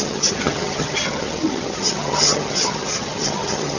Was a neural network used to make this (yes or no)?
yes